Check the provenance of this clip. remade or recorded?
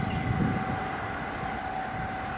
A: recorded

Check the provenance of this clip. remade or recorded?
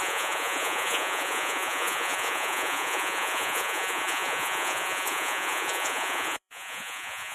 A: remade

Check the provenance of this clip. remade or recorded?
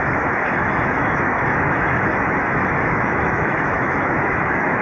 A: remade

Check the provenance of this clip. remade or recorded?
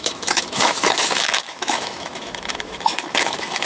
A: remade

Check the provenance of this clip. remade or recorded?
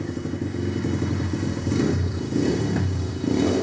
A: remade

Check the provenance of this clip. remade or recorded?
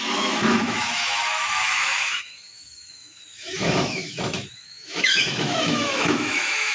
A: remade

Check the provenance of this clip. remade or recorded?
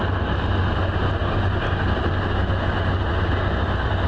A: recorded